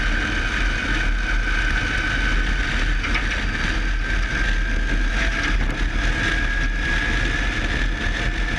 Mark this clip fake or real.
real